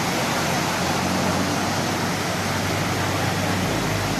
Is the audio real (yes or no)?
yes